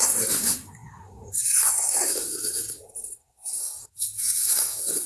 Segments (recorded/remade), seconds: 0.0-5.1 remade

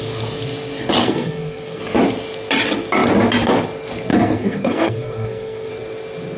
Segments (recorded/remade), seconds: 0.0-1.0 recorded; 1.0-1.8 remade; 1.8-4.1 recorded; 4.1-5.7 remade; 5.7-6.4 recorded

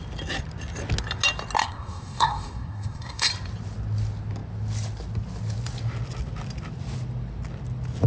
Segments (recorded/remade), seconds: 0.0-1.6 recorded; 1.6-3.3 remade; 3.3-8.1 recorded

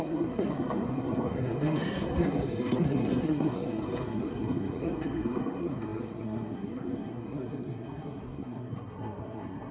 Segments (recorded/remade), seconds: 0.0-9.7 remade